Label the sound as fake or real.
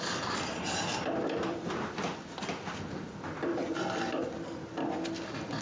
real